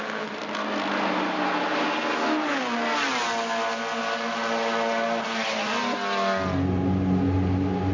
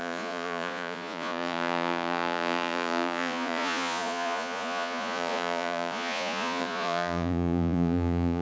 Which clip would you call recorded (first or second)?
first